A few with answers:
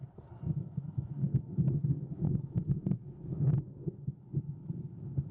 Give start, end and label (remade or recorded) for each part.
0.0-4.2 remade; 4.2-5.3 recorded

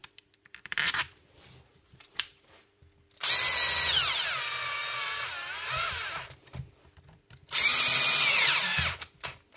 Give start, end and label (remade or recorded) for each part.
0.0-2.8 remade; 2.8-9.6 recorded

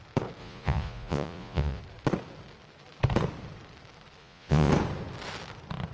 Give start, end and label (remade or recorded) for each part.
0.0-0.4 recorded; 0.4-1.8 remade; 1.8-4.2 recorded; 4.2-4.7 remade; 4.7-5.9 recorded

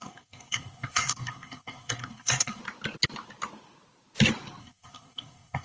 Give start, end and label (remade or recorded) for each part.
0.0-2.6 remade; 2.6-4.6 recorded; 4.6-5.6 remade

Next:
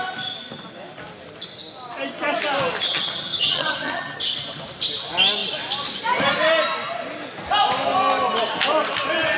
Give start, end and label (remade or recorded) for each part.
0.0-2.9 recorded; 2.9-4.2 remade; 4.2-9.4 recorded